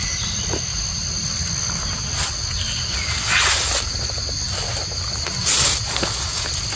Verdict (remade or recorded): recorded